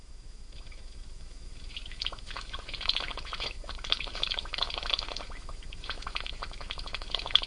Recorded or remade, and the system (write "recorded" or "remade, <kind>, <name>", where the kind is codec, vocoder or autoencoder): remade, autoencoder, DAC-VAE